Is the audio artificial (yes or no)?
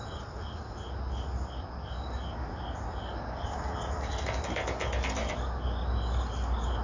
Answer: no